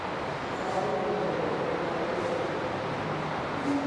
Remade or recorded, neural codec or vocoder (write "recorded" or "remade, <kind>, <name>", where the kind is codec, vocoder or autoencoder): recorded